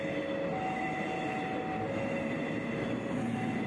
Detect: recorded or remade recorded